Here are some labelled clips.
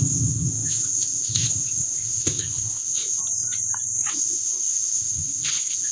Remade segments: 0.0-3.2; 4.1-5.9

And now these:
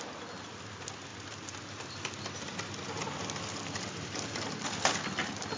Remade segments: none